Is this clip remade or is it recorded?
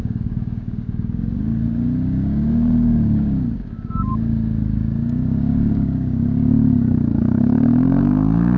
remade